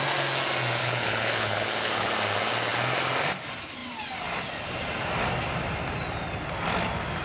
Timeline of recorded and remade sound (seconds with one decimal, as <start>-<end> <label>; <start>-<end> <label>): 0.0-0.8 recorded; 0.8-2.1 remade; 2.1-7.2 recorded